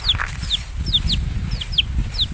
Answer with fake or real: real